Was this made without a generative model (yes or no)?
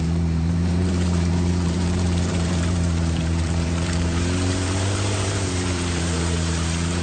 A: no